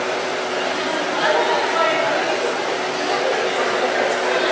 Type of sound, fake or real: real